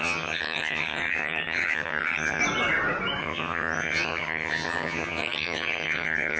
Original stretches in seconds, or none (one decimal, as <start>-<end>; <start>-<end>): 2.4-3.2